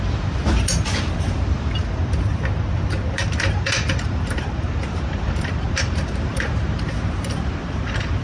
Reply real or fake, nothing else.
fake